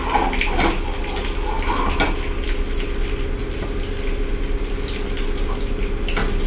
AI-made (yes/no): no